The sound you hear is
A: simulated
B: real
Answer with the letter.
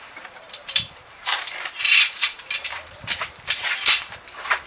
A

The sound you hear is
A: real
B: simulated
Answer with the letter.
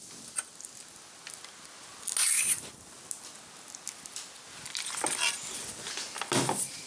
A